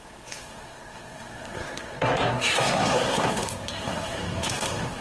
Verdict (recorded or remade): remade